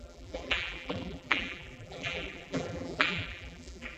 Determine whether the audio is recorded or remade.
remade